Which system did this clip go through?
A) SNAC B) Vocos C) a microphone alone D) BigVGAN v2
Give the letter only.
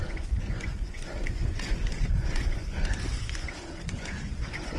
B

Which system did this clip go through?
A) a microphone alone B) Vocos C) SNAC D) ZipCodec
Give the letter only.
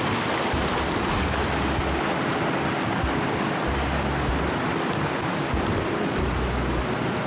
A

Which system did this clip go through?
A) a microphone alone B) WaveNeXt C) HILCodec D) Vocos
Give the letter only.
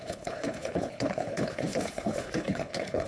C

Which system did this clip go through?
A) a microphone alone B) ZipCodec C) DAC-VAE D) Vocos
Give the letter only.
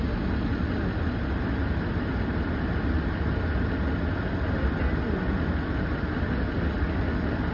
A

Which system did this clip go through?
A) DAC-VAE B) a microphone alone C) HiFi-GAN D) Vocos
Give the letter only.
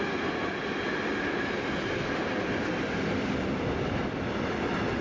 B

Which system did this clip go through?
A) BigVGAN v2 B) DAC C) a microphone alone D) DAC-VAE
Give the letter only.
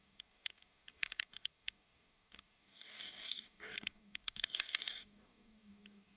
B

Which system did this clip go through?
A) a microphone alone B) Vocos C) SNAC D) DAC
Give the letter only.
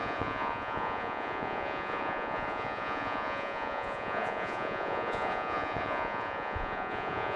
B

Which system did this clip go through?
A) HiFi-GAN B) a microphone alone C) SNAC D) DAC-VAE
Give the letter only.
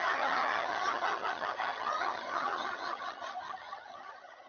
A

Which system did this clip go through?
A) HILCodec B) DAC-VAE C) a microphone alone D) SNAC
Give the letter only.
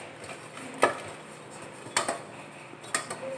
C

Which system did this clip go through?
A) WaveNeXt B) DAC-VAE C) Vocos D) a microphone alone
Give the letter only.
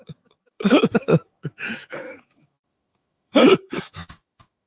B